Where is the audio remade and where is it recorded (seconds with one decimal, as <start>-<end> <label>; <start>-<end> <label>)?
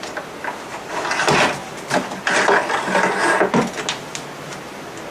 0.0-5.1 recorded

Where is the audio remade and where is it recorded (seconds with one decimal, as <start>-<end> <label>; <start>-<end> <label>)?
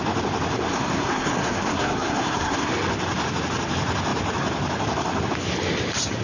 0.0-0.7 recorded; 0.7-2.7 remade; 2.7-6.2 recorded